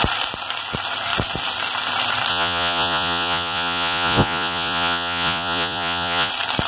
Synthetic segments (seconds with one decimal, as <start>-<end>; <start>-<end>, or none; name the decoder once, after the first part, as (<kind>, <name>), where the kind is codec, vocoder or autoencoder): 2.3-6.3 (vocoder, Vocos)